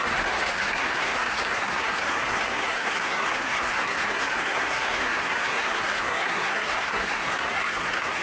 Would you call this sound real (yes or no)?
no